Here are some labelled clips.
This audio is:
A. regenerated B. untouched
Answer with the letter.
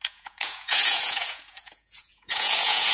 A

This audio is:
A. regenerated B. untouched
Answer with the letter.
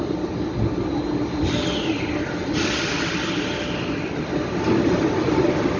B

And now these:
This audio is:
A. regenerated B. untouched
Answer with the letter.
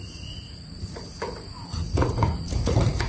A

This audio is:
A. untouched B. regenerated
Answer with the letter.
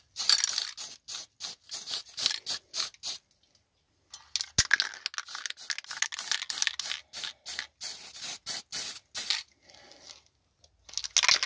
A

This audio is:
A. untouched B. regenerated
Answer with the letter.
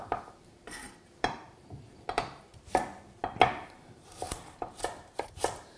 B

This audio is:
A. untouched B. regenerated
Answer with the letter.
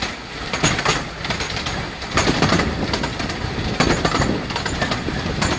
A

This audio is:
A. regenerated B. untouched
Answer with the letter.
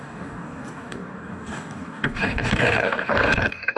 A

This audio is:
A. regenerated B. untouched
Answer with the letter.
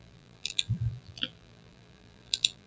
A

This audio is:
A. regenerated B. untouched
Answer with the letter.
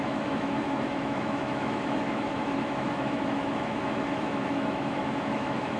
A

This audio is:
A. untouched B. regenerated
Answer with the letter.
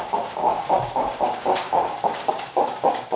B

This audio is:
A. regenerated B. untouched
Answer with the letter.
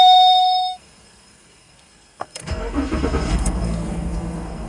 A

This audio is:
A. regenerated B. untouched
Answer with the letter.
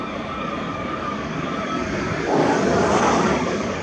A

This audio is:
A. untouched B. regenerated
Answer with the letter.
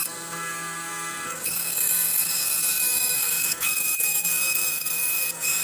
B